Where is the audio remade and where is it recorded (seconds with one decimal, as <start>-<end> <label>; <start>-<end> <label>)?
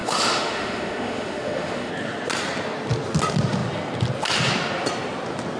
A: 0.0-1.9 remade; 1.9-5.6 recorded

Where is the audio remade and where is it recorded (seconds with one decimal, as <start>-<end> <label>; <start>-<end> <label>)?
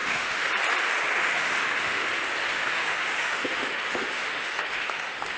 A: 0.0-0.5 remade; 0.5-1.2 recorded; 1.2-2.1 remade; 2.1-2.5 recorded; 2.5-5.4 remade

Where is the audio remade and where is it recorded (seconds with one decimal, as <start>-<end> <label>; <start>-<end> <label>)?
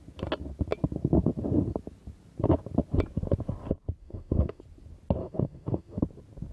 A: 0.0-4.0 recorded; 4.0-4.6 remade; 4.6-5.2 recorded; 5.2-6.0 remade; 6.0-6.5 recorded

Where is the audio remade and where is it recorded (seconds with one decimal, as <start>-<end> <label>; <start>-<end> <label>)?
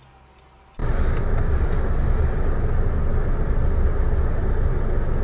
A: 0.0-5.2 recorded